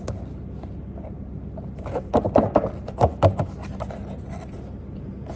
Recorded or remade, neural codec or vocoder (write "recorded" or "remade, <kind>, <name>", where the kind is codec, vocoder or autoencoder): recorded